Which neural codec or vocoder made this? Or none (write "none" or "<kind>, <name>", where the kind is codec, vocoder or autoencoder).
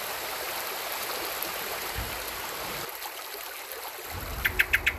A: none